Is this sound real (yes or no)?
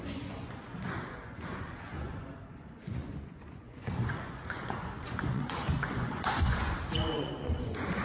no